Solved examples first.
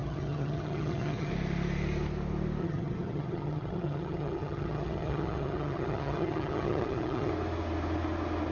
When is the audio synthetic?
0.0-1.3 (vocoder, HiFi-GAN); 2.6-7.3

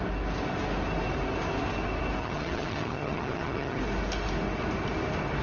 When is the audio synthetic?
2.2-3.8 (vocoder, HiFi-GAN)